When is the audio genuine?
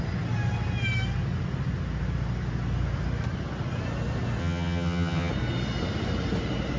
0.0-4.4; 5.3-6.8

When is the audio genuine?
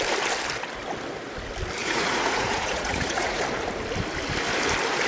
0.0-1.8; 3.4-5.1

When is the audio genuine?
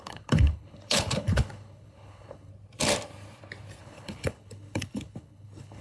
2.5-3.8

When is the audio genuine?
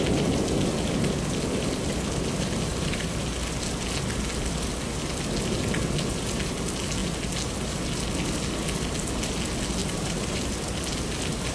0.0-2.7; 3.3-9.8; 10.5-11.5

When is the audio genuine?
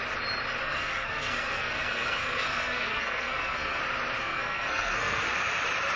0.0-0.6; 3.8-4.2; 5.2-6.0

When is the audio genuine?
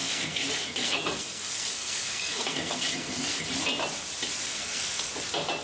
3.4-4.5; 5.1-5.6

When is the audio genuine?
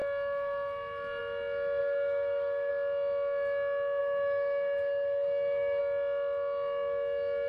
0.0-1.8; 2.7-4.0; 5.8-7.5